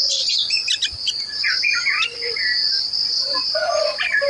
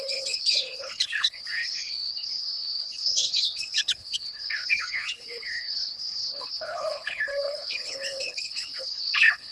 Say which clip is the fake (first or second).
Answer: second